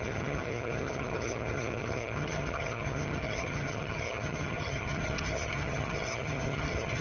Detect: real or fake fake